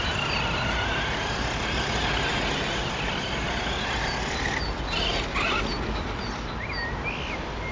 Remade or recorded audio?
recorded